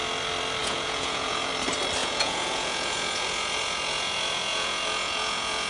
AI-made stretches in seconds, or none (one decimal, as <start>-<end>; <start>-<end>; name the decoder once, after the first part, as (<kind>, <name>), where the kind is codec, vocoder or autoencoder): 0.6-1.5 (vocoder, Vocos); 2.0-5.7